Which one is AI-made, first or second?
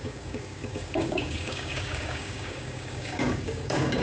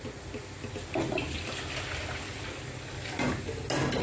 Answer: first